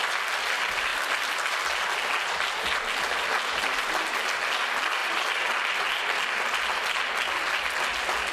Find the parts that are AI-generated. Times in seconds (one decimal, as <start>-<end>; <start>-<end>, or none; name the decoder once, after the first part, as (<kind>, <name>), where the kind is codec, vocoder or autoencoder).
none